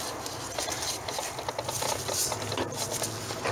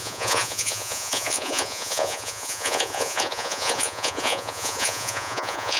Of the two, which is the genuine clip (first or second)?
first